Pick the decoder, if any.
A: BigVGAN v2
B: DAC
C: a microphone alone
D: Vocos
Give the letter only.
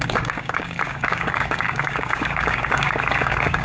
B